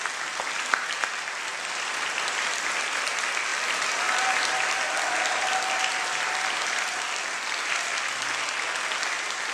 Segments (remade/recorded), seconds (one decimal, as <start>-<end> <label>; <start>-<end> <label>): 0.0-1.5 recorded; 1.5-2.4 remade; 2.4-3.5 recorded; 3.5-8.2 remade; 8.2-9.5 recorded